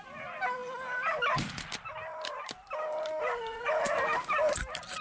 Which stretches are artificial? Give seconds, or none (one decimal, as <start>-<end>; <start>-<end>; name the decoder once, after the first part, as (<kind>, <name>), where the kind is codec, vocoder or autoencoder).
0.6-3.6 (vocoder, BigVGAN v2)